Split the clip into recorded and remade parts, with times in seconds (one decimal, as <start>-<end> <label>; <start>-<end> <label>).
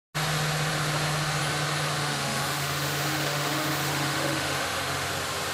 0.0-2.0 recorded; 2.0-5.1 remade; 5.1-5.5 recorded